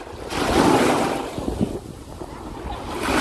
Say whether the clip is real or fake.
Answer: real